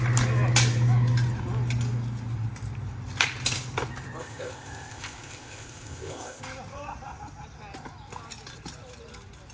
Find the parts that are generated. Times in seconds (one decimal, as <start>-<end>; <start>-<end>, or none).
4.2-6.4